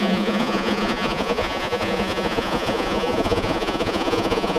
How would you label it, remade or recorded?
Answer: remade